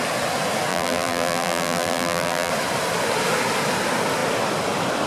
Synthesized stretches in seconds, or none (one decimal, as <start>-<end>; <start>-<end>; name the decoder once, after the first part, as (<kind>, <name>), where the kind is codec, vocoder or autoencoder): 0.7-2.5 (vocoder, BigVGAN v2)